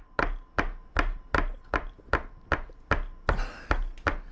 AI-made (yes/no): no